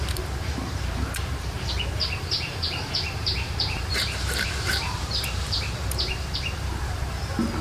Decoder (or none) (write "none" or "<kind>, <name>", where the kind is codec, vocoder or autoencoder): vocoder, BigVGAN v2